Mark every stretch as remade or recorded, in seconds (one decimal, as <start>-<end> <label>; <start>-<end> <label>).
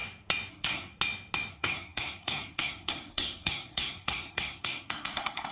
0.0-0.5 recorded; 0.5-0.9 remade; 0.9-1.5 recorded; 1.5-5.5 remade